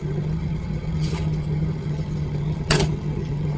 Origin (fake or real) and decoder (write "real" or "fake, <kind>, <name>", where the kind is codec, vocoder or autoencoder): fake, vocoder, HiFi-GAN